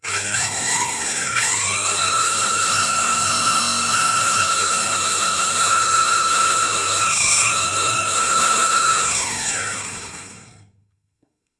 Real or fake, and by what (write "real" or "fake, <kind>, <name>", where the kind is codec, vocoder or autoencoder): fake, codec, SNAC